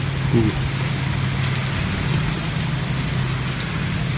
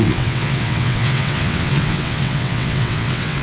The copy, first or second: second